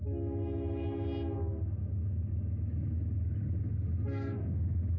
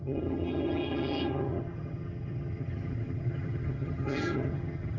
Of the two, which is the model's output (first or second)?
second